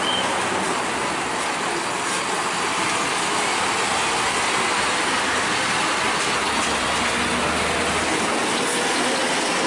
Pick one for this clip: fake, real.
real